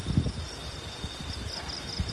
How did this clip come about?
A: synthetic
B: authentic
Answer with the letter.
B